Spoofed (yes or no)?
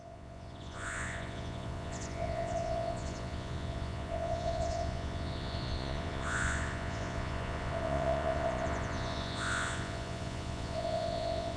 yes